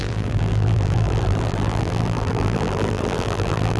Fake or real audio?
fake